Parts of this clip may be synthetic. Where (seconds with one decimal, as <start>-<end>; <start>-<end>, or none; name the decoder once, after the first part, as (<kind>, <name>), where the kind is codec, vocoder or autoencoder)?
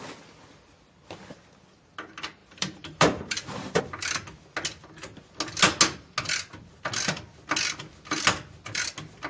2.4-3.8 (vocoder, BigVGAN v2)